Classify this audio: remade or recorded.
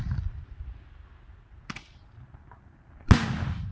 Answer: recorded